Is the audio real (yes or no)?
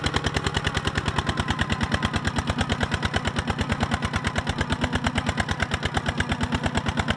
yes